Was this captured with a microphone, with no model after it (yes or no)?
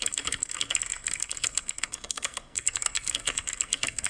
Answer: no